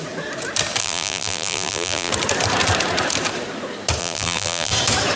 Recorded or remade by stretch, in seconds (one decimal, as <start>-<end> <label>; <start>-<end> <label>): 0.0-0.8 recorded; 0.8-2.1 remade; 2.1-4.0 recorded; 4.0-4.7 remade; 4.7-5.2 recorded